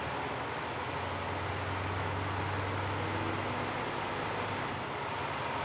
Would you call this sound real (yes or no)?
yes